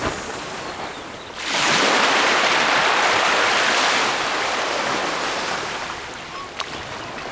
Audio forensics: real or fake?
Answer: real